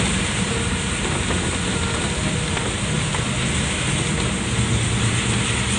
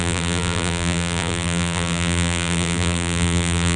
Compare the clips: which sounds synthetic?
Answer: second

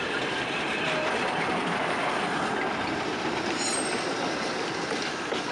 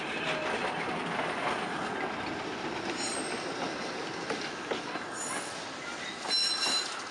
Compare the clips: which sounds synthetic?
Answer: first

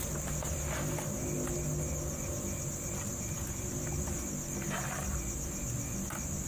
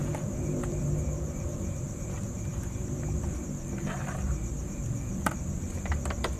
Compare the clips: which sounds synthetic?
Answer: second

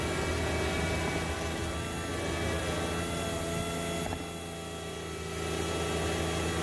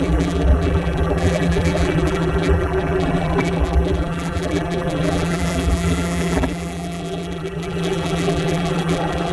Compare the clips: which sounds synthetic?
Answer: second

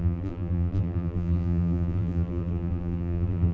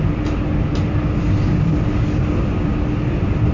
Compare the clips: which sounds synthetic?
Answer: first